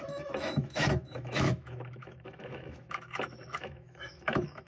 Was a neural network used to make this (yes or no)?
yes